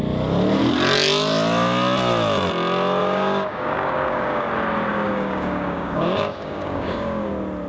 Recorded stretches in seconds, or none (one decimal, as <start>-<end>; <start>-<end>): 0.0-3.0; 4.5-4.9; 7.3-7.7